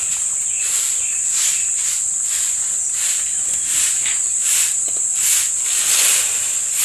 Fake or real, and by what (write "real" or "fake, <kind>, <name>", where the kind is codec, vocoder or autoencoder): real